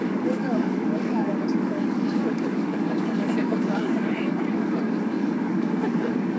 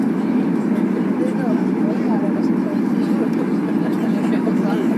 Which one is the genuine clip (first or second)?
second